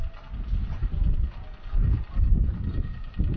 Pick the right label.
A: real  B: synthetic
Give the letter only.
A